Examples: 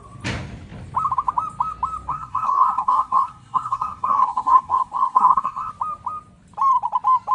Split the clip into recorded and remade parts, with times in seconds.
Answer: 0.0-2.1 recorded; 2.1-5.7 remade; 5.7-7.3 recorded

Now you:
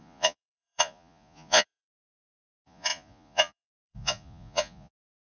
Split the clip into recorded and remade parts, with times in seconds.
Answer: 0.0-5.3 remade